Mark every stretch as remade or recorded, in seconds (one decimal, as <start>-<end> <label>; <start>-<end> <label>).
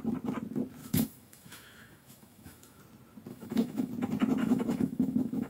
0.0-0.8 recorded; 0.8-2.8 remade; 2.8-3.3 recorded; 3.3-3.9 remade; 3.9-4.4 recorded; 4.4-5.5 remade